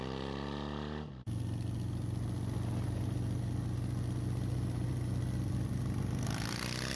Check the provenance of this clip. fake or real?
real